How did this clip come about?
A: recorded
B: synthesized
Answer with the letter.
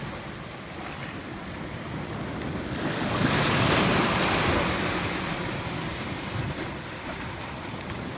A